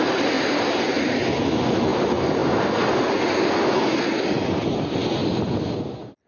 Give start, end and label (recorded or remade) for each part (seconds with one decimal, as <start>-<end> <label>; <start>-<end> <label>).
0.0-6.3 recorded